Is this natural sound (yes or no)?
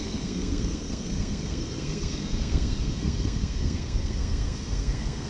no